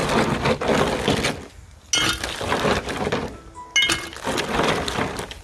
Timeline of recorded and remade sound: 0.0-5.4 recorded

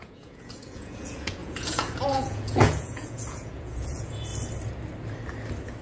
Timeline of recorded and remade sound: 0.0-4.3 remade; 4.3-5.8 recorded

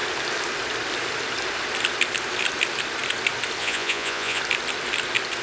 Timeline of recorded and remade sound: 0.0-3.6 recorded; 3.6-4.4 remade; 4.4-5.4 recorded

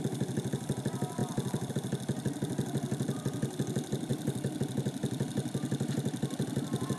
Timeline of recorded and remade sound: 0.0-7.0 recorded

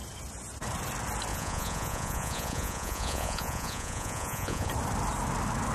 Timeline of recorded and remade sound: 0.0-1.3 recorded; 1.3-4.7 remade; 4.7-5.7 recorded

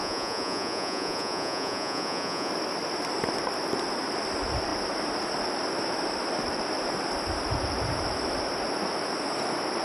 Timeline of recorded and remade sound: 0.0-2.5 remade; 2.5-9.8 recorded

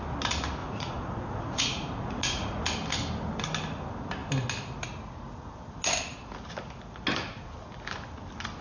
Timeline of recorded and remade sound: 0.0-0.6 recorded; 0.6-2.6 remade; 2.6-8.6 recorded